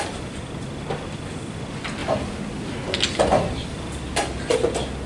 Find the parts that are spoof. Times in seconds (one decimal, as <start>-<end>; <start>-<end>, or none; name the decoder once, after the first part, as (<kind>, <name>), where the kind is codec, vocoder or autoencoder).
none